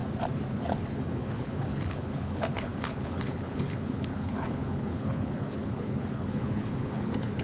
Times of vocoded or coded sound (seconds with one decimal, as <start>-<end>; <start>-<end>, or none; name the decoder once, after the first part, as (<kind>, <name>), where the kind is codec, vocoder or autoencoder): 0.5-7.4 (codec, HILCodec)